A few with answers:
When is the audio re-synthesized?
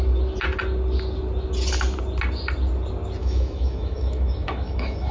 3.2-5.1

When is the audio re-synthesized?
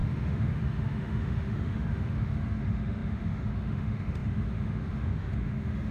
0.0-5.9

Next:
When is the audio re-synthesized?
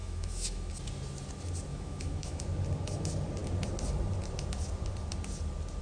0.0-0.7; 1.7-2.4